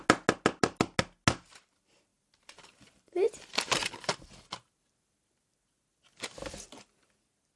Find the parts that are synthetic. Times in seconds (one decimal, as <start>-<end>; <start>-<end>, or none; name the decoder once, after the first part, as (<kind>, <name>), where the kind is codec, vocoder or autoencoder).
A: 2.1-3.3 (vocoder, BigVGAN v2)